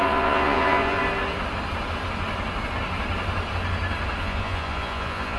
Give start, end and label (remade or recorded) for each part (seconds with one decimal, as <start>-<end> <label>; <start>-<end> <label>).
0.0-1.0 remade; 1.0-4.2 recorded; 4.2-5.4 remade